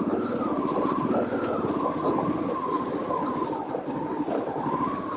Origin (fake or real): real